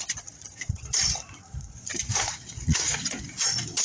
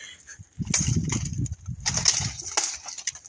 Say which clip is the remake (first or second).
first